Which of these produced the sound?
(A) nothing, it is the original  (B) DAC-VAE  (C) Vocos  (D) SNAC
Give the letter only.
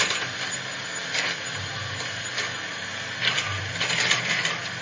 A